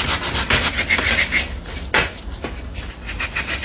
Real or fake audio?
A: real